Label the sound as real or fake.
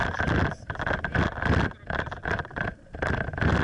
real